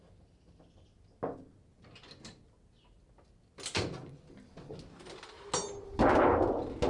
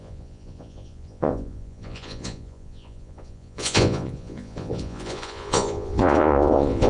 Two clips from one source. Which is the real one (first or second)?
first